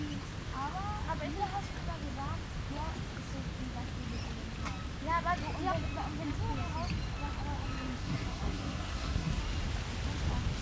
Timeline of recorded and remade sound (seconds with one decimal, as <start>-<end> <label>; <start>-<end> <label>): 0.0-8.0 recorded; 8.0-9.4 remade; 9.4-10.6 recorded